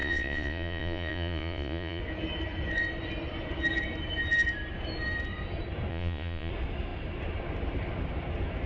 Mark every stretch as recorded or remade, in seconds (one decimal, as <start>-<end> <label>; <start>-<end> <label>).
0.0-2.0 remade; 2.0-5.9 recorded; 5.9-6.5 remade; 6.5-8.7 recorded